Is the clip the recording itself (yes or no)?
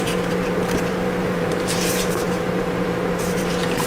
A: no